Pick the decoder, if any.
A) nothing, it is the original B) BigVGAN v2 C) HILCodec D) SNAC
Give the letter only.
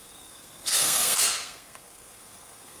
D